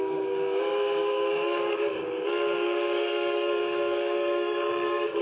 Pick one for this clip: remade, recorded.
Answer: remade